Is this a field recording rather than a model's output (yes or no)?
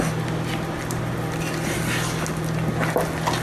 yes